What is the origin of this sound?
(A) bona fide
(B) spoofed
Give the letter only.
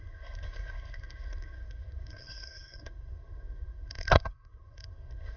B